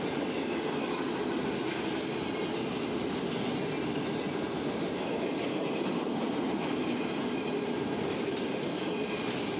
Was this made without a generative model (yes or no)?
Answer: yes